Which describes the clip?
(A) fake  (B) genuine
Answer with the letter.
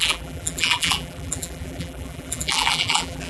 A